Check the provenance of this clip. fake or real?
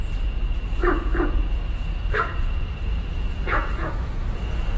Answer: fake